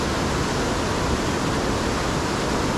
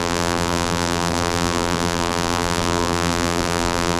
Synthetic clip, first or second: second